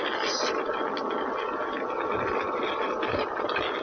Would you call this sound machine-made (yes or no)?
no